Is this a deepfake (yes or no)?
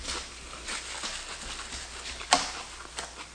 no